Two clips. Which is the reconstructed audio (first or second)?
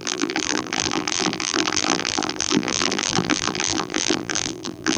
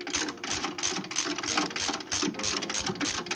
first